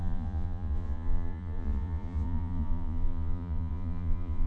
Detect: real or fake fake